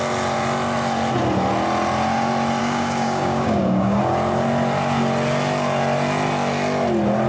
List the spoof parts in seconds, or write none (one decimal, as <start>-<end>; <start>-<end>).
2.6-4.0